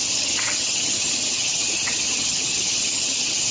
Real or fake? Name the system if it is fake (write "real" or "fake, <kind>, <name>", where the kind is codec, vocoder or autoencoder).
fake, vocoder, HiFi-GAN